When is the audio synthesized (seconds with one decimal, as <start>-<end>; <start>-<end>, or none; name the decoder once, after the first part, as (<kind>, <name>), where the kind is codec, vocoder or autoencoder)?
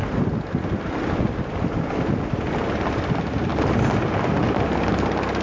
none